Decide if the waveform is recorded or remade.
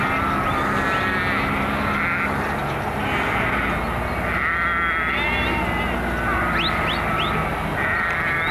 recorded